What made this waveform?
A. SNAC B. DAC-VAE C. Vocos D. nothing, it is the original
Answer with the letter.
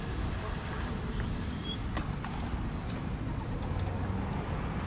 D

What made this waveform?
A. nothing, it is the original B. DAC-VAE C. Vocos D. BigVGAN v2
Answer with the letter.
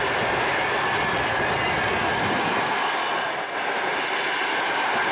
A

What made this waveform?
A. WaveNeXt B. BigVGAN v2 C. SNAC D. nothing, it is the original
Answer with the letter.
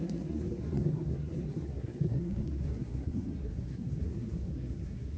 C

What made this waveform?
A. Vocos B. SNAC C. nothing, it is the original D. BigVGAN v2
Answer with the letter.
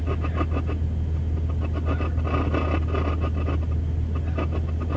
C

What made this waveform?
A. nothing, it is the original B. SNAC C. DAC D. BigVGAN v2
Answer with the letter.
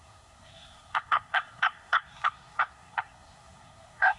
B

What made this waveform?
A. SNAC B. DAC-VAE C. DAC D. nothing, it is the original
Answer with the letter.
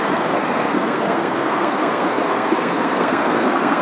A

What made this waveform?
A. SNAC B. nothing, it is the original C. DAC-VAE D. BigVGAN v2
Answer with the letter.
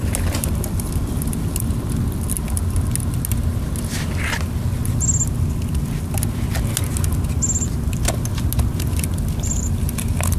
B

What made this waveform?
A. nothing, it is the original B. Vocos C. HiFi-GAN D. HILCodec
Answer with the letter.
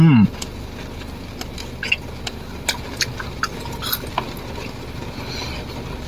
A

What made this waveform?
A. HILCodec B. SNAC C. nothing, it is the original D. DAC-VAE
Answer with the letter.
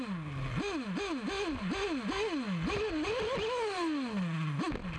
C